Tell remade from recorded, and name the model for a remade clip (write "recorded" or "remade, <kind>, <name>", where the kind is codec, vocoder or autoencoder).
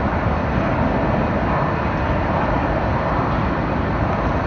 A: recorded